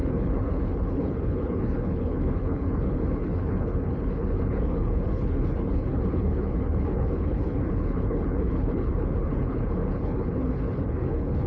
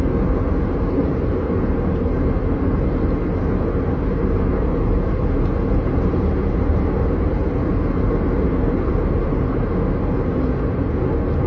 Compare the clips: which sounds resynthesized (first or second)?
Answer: first